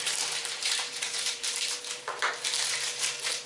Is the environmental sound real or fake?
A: fake